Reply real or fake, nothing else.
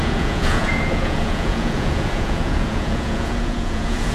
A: fake